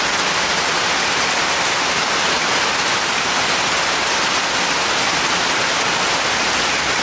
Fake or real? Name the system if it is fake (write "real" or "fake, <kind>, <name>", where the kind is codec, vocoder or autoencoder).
real